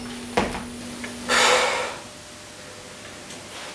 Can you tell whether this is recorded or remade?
recorded